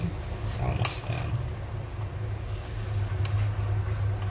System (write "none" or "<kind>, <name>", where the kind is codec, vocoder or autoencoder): none